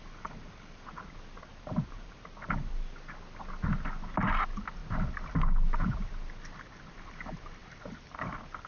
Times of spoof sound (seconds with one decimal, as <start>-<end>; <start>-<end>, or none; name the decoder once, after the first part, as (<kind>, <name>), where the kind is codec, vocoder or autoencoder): 1.5-2.5 (vocoder, BigVGAN v2); 7.6-8.7